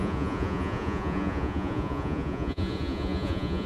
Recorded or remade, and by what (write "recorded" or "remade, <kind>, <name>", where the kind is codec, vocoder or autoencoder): remade, vocoder, Vocos